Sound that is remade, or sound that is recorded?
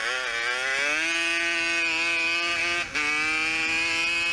recorded